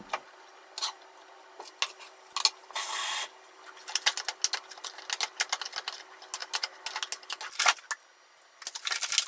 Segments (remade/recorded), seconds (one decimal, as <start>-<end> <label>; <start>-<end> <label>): 0.0-9.3 recorded